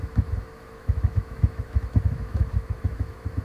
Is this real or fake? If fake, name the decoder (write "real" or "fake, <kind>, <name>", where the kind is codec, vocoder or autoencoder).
fake, autoencoder, DAC-VAE